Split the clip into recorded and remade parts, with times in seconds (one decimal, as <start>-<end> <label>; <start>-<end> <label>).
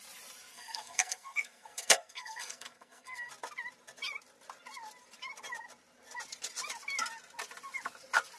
0.0-0.5 recorded; 0.5-3.3 remade; 3.3-8.4 recorded